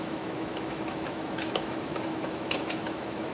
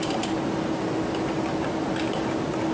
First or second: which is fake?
first